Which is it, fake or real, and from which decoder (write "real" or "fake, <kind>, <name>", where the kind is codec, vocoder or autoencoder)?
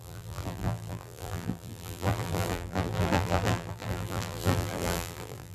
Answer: fake, vocoder, BigVGAN v2